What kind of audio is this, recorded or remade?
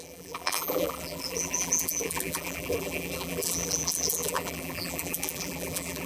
remade